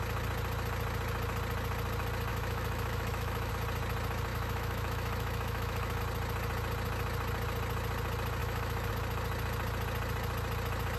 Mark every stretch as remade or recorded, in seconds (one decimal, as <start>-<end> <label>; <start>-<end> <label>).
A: 0.0-2.3 recorded; 2.3-3.5 remade; 3.5-4.3 recorded; 4.3-6.0 remade; 6.0-8.4 recorded; 8.4-8.9 remade; 8.9-11.0 recorded